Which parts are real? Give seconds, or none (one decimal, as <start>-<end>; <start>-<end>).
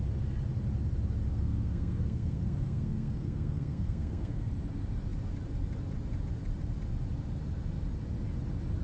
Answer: 0.0-1.3; 4.5-8.8